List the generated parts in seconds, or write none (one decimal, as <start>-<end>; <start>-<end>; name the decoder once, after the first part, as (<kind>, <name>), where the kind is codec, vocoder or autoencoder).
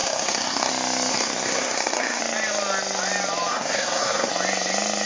0.0-0.7 (codec, SNAC); 1.1-2.2; 3.5-4.3